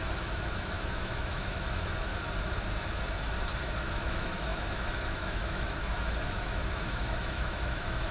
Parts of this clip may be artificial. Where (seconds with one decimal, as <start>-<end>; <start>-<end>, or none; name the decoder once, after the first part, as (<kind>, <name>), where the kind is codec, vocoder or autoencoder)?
0.0-2.1 (autoencoder, DAC-VAE); 3.3-8.1